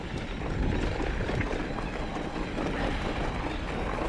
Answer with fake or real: real